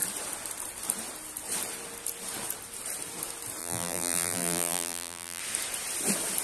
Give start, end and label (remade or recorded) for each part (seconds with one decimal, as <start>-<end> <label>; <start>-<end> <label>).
0.0-3.6 recorded; 3.6-5.4 remade; 5.4-6.4 recorded